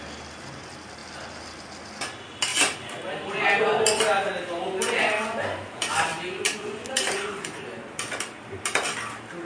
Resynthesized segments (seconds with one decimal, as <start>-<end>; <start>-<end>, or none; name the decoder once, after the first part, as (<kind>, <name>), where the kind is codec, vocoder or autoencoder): 1.0-1.9 (vocoder, BigVGAN v2)